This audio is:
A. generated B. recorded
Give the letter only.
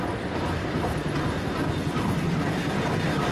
B